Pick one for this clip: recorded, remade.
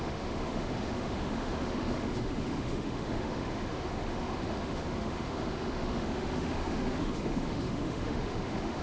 remade